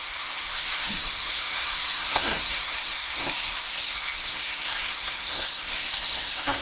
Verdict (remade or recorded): remade